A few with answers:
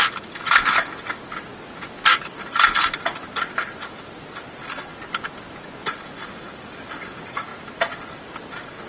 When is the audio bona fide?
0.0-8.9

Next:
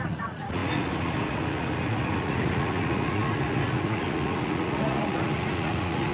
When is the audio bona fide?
none